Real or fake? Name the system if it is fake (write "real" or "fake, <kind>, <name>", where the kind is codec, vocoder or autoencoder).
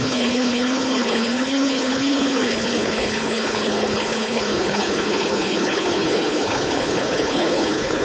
fake, codec, HILCodec